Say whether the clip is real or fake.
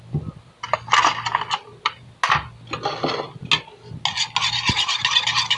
real